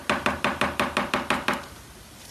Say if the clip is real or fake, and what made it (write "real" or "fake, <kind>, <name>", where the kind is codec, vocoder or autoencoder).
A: real